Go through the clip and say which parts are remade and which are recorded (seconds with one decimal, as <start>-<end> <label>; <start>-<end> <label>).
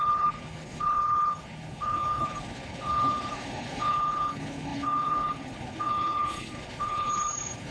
0.0-7.7 remade